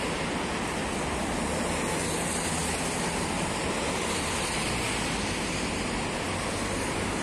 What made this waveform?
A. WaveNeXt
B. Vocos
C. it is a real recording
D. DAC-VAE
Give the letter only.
C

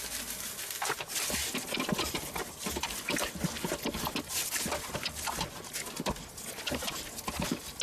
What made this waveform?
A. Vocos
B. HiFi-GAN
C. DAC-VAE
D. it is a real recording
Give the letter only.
D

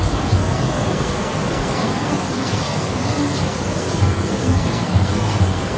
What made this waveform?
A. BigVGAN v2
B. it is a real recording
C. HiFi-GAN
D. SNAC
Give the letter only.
D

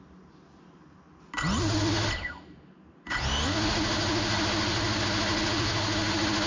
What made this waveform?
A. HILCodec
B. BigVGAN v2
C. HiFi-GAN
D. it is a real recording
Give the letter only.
D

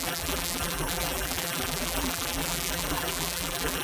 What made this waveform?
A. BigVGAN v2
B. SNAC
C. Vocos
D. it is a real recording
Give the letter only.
A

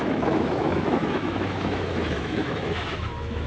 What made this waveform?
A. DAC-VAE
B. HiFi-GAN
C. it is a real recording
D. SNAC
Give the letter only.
A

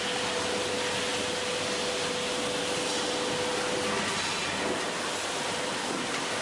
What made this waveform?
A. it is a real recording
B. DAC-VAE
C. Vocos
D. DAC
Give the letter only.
A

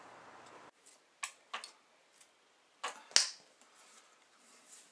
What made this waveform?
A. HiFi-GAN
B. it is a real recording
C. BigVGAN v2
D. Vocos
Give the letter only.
B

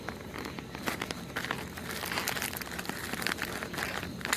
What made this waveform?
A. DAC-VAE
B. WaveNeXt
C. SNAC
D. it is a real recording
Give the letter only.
D